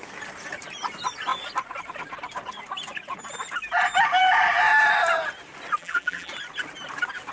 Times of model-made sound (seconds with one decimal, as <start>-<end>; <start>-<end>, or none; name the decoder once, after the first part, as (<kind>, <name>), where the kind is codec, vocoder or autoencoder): 5.8-6.3 (vocoder, BigVGAN v2)